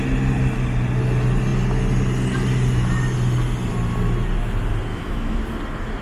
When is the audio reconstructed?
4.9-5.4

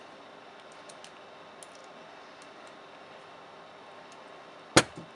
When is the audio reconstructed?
none

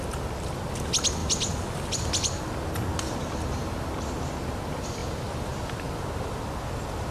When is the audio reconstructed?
none

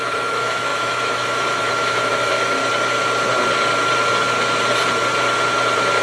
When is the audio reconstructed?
0.0-2.6

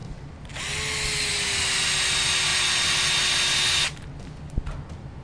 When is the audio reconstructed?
none

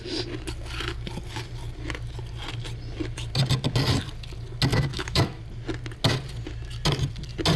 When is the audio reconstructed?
4.7-5.4

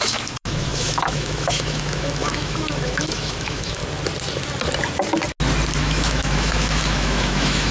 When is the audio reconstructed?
0.0-3.8; 5.8-7.7

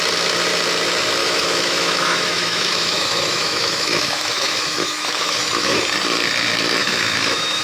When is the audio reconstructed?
1.2-5.8; 6.8-7.6